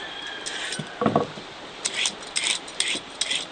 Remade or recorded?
recorded